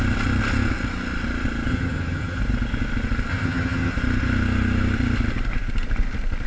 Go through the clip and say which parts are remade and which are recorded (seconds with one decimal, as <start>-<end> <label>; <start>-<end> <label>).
0.0-1.7 recorded; 1.7-2.4 remade; 2.4-3.3 recorded; 3.3-3.9 remade; 3.9-6.5 recorded